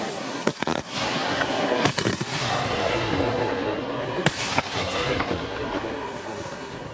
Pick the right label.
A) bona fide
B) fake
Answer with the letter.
B